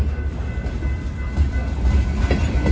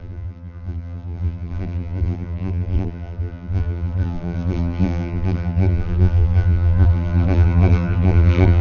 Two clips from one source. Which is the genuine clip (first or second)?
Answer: first